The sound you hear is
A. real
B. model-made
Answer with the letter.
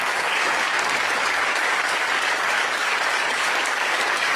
B